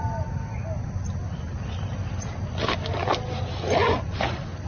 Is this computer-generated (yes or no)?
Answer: no